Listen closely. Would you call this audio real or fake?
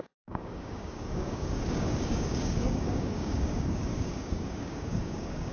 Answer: fake